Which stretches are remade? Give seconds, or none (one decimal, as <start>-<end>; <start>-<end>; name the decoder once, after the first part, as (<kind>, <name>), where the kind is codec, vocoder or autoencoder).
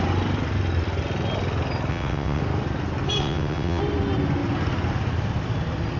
1.9-2.4 (vocoder, WaveNeXt); 3.2-3.8